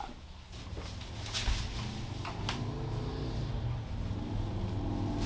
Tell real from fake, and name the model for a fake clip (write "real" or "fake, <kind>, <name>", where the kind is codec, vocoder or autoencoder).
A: real